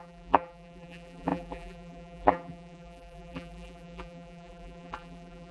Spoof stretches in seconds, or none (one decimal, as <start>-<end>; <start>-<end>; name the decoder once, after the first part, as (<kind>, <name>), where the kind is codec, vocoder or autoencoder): 0.0-5.5 (vocoder, BigVGAN v2)